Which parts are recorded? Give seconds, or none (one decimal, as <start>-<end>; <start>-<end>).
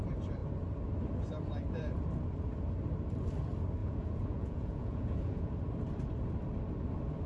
0.0-3.8; 5.5-7.3